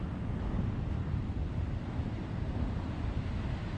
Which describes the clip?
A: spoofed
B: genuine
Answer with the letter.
B